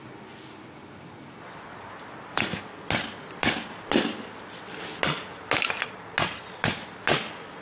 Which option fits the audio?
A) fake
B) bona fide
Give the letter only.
B